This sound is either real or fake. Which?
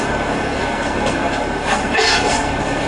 fake